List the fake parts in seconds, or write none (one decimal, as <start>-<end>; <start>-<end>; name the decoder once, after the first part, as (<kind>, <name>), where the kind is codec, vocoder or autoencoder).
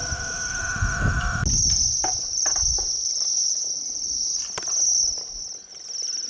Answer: 2.3-4.4 (vocoder, BigVGAN v2)